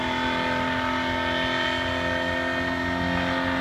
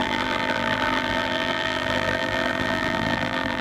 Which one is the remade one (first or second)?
second